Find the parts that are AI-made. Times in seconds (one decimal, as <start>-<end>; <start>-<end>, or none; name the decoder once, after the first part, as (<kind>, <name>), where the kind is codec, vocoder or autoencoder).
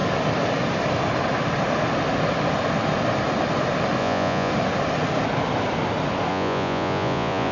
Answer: 4.0-4.5 (vocoder, Vocos); 6.3-7.5